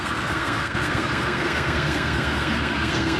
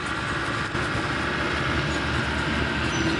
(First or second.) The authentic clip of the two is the second